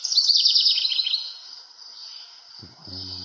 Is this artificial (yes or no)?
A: no